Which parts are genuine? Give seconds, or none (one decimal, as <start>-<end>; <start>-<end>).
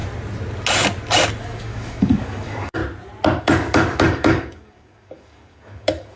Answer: 0.0-1.4; 2.8-3.4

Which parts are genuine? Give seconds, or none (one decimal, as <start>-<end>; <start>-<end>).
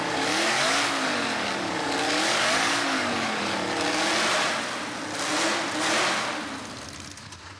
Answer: 4.0-7.6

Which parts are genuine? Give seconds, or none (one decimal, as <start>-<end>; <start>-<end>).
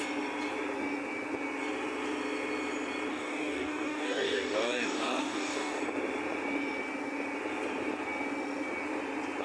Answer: 0.0-3.1; 5.8-9.4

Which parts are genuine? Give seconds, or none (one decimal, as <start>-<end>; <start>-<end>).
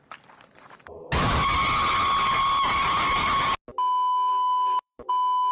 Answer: 0.0-4.3; 5.1-5.5